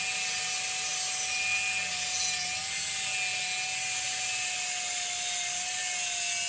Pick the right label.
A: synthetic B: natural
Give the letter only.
B